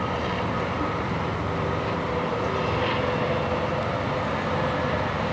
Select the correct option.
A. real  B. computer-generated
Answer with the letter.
A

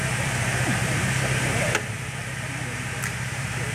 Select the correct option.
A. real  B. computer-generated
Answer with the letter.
B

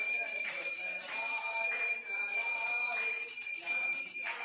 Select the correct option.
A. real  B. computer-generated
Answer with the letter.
B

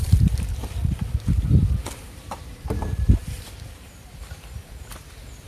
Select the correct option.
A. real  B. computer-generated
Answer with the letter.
B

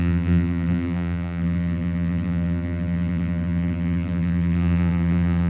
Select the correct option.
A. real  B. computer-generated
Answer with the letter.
B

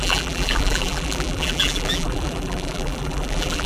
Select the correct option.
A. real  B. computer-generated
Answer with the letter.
B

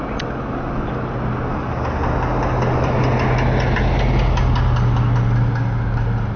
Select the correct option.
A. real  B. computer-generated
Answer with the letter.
A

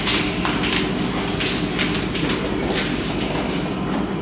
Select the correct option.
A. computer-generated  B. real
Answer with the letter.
B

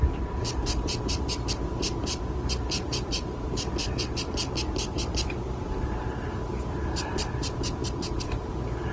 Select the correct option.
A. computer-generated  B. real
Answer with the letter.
A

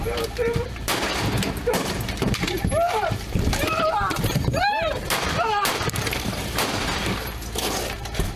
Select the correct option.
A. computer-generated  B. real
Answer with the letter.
A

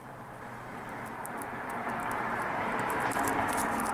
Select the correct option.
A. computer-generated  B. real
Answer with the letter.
A